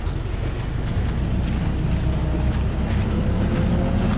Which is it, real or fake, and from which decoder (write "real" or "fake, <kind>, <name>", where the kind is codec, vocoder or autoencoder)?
real